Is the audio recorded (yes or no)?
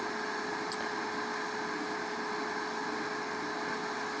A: yes